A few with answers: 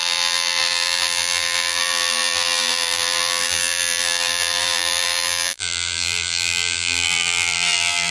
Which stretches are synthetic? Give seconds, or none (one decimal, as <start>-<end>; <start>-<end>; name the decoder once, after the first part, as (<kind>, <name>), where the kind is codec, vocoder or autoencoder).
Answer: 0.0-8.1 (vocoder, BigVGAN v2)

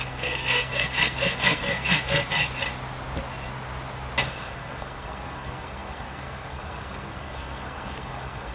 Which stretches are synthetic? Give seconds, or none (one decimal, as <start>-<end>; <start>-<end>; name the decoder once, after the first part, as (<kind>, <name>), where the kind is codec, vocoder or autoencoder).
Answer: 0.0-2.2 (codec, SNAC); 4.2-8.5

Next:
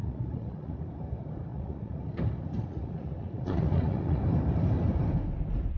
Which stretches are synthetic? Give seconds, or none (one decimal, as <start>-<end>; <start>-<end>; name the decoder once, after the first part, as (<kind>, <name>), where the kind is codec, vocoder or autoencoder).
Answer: 0.0-0.8 (vocoder, Vocos); 1.5-2.0; 2.6-4.2

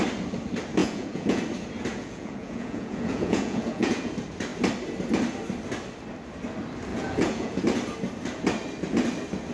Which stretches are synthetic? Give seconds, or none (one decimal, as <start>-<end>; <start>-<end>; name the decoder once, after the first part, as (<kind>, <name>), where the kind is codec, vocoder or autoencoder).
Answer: 0.8-1.4 (vocoder, Vocos); 1.9-4.1; 6.9-7.6

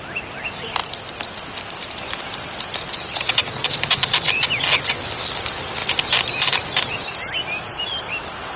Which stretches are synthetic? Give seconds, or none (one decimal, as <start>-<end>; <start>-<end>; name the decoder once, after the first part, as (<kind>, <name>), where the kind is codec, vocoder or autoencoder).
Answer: 0.8-2.0 (vocoder, BigVGAN v2); 5.8-6.9

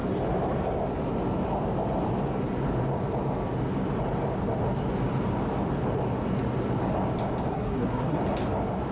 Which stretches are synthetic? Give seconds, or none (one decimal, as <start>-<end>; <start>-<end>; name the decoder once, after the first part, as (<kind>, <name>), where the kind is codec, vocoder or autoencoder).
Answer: 7.5-8.2 (codec, SNAC)

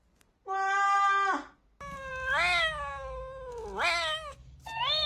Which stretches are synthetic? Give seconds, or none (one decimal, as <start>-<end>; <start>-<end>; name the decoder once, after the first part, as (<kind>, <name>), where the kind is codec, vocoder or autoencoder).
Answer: none